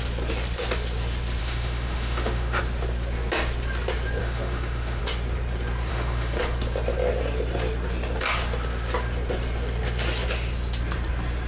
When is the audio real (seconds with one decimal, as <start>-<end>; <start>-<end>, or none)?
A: 0.0-1.4; 2.6-4.2; 5.0-5.9; 6.4-11.5